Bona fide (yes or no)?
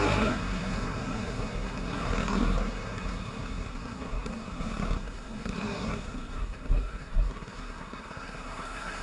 no